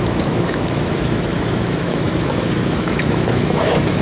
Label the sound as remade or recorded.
remade